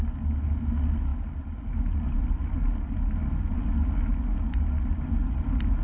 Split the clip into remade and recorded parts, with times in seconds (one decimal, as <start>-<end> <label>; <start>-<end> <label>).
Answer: 0.0-5.8 recorded